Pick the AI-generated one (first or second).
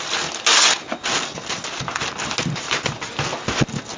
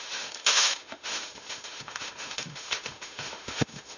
second